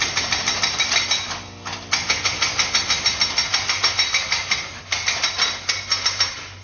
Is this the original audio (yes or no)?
yes